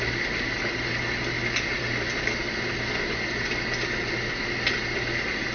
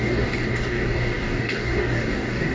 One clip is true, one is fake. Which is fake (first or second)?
second